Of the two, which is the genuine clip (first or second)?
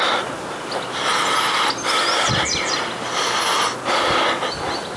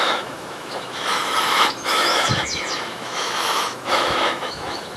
first